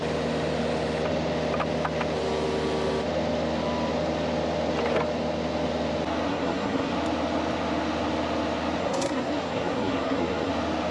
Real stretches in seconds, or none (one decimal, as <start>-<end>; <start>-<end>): 0.0-6.3; 6.9-8.8; 10.5-10.9

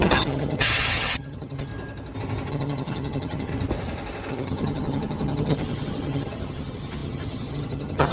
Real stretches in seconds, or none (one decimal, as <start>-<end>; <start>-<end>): 1.7-2.5; 3.5-4.3